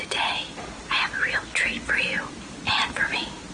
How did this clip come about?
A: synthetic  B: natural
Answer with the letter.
B